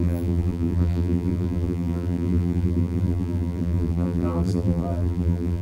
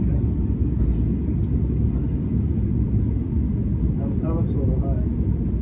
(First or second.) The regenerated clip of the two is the first